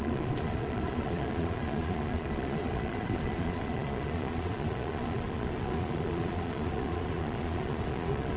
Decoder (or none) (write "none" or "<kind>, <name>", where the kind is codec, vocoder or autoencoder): vocoder, Vocos